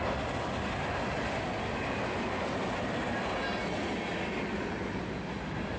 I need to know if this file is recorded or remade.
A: recorded